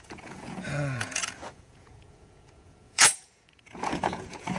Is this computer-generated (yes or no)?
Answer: yes